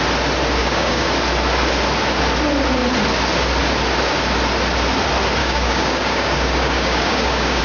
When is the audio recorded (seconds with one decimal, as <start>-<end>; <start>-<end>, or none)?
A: 0.0-0.6; 1.1-5.4